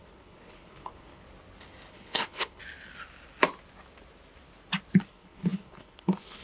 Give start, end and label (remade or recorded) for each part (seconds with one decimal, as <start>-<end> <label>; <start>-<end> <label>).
0.0-1.2 remade; 1.2-1.9 recorded; 1.9-2.6 remade; 2.6-5.1 recorded; 5.1-6.4 remade